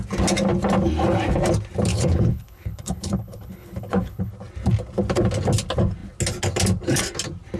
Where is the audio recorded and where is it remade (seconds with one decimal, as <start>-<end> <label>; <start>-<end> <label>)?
0.0-1.9 recorded; 1.9-4.3 remade; 4.3-7.6 recorded